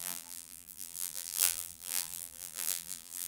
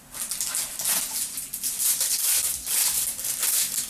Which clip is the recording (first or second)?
second